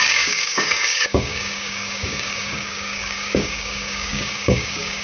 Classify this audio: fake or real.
fake